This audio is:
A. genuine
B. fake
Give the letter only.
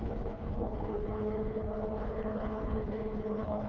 B